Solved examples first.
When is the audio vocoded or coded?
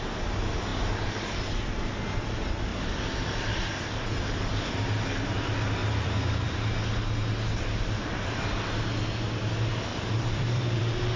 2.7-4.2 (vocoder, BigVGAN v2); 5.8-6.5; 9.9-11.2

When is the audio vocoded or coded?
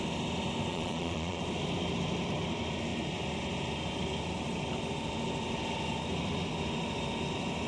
0.7-1.4 (vocoder, Vocos)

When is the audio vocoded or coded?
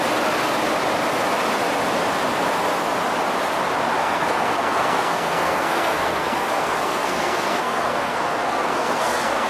4.0-9.5 (codec, SNAC)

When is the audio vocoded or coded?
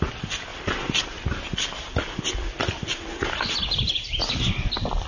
none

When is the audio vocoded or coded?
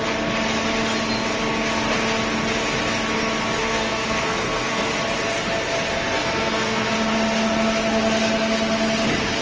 3.6-4.9 (codec, SNAC); 5.9-6.9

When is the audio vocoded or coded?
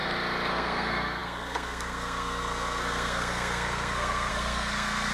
0.5-5.1 (codec, SNAC)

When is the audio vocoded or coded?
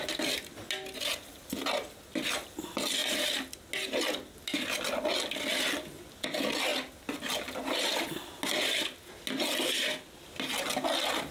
none